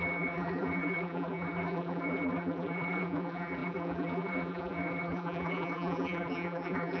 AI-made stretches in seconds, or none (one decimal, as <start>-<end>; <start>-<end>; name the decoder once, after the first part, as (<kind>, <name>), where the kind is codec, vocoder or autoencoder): 0.0-7.0 (vocoder, BigVGAN v2)